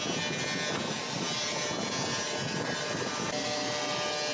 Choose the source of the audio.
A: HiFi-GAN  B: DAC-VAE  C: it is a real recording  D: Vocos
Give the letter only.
C